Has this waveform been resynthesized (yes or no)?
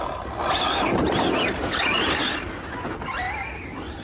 no